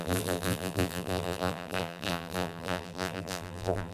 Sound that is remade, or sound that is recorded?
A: remade